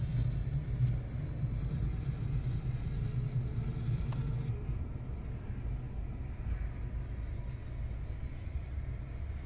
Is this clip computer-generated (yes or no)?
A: no